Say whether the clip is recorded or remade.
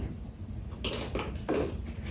recorded